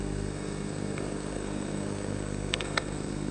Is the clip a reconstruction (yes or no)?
yes